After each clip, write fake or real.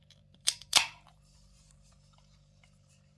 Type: fake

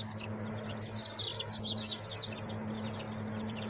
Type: real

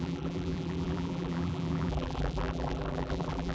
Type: fake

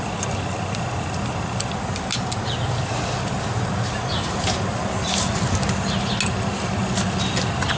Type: real